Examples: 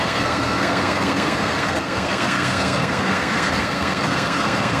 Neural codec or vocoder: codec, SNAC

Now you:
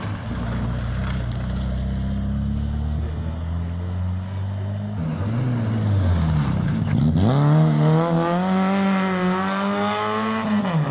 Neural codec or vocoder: none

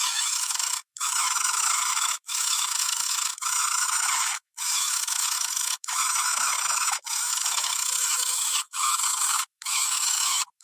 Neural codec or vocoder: autoencoder, DAC-VAE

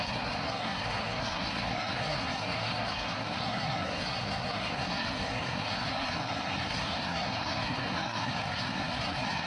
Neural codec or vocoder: codec, SNAC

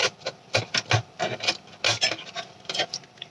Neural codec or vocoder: none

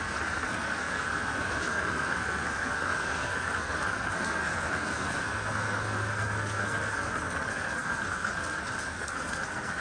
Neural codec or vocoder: codec, SNAC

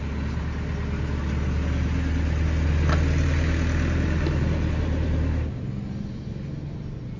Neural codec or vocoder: none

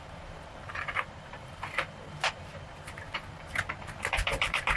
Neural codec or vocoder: vocoder, BigVGAN v2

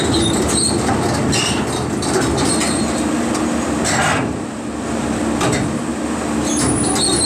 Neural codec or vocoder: none